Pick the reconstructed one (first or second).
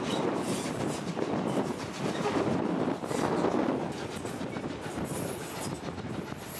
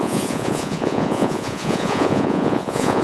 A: second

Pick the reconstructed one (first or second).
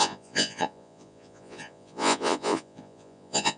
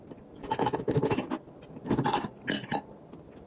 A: first